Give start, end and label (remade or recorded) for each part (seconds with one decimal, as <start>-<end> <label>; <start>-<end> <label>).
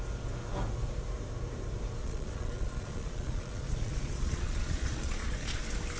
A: 0.0-2.0 recorded; 2.0-5.6 remade; 5.6-6.0 recorded